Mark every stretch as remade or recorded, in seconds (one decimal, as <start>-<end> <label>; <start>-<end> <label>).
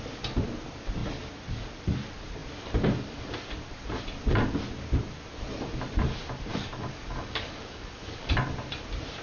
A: 0.0-6.5 recorded; 6.5-8.3 remade; 8.3-9.2 recorded